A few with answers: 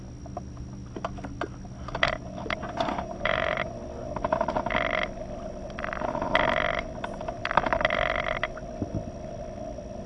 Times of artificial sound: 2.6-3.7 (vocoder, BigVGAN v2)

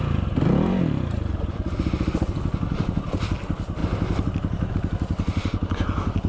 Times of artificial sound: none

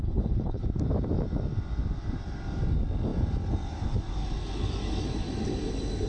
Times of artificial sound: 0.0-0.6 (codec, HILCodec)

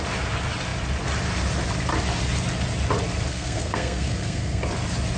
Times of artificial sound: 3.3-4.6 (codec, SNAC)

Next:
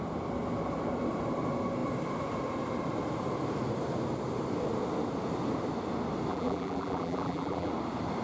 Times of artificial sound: 6.3-7.7 (vocoder, BigVGAN v2)

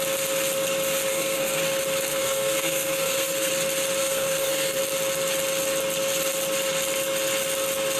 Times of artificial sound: 1.1-1.6 (codec, SNAC); 2.1-3.5; 4.0-4.8